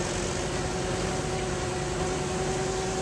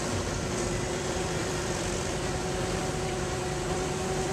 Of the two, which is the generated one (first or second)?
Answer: second